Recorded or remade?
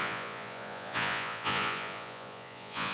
remade